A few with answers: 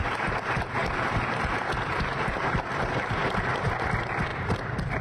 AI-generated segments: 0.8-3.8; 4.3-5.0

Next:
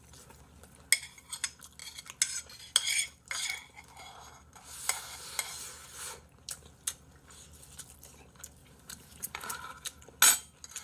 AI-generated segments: 8.6-10.0